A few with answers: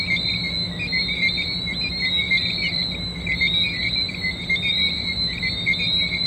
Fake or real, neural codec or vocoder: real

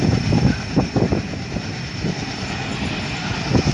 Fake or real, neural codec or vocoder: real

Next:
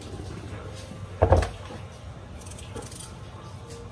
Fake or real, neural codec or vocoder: real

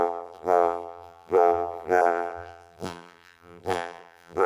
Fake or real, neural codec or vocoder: fake, vocoder, BigVGAN v2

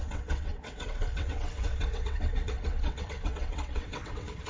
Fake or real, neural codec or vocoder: fake, vocoder, WaveNeXt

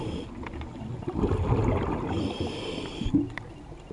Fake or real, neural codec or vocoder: real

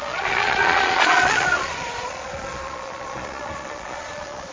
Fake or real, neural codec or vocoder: fake, vocoder, Vocos